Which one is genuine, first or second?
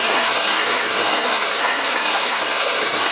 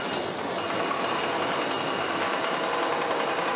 second